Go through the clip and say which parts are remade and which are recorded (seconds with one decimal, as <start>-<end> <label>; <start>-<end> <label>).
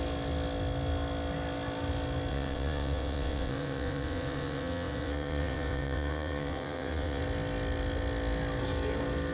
0.0-2.3 recorded; 2.3-7.2 remade; 7.2-9.3 recorded